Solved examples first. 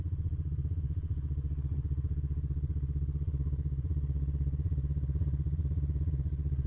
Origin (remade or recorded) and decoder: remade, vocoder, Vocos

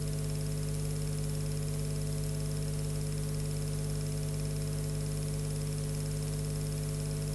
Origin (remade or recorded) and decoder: recorded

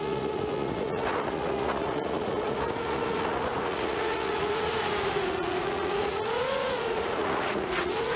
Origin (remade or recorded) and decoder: remade, vocoder, Vocos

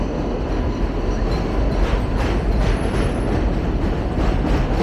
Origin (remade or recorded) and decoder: recorded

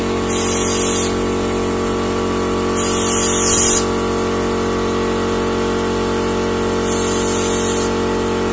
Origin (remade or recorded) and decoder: recorded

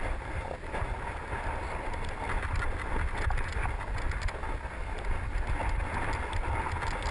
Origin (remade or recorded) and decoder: recorded